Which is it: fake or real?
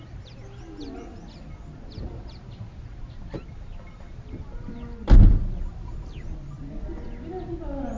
real